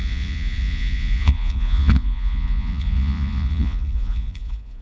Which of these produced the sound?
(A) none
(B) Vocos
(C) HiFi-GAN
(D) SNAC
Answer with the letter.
B